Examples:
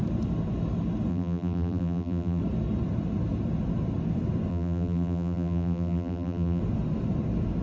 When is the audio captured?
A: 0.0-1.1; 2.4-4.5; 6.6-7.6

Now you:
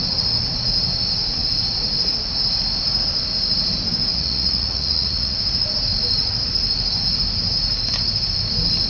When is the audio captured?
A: 0.0-4.1; 5.4-8.9

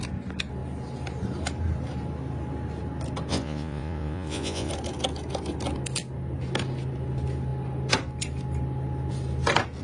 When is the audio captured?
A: 0.0-3.3; 4.7-9.8

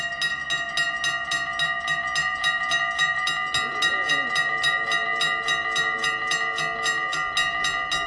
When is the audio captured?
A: 0.0-8.1

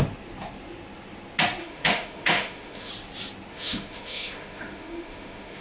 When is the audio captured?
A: 0.0-1.6; 2.9-3.5

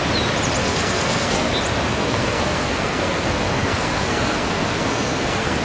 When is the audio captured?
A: 0.0-0.6; 1.5-1.9

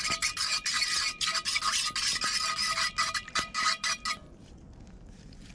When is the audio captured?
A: 0.0-5.5

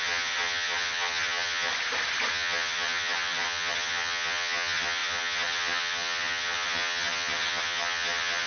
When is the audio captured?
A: 1.7-2.3